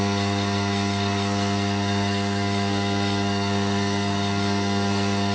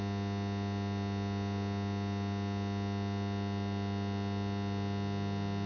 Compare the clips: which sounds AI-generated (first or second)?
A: first